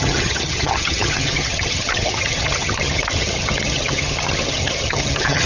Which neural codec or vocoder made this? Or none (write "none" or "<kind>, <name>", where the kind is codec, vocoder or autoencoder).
vocoder, HiFi-GAN